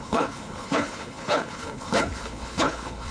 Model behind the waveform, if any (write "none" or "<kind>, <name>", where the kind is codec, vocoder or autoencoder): codec, HILCodec